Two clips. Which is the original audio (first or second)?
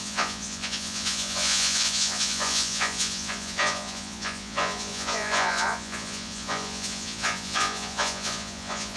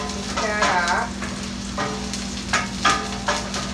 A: second